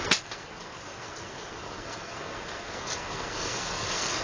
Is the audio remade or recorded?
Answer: remade